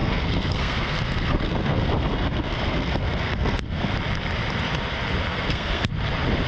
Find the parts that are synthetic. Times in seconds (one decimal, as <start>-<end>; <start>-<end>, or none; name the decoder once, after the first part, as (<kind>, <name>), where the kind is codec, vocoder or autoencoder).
0.0-3.9 (codec, SNAC); 5.3-5.9